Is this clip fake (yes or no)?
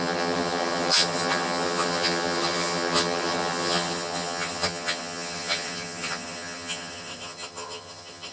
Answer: yes